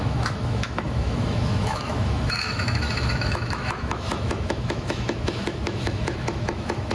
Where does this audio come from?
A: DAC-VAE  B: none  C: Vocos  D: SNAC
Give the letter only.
A